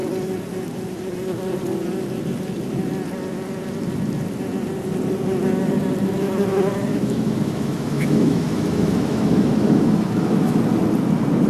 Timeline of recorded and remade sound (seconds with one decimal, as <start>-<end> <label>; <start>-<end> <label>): 0.0-6.9 recorded; 6.9-10.6 remade; 10.6-11.5 recorded